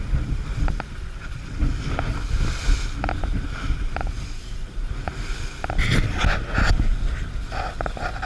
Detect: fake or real real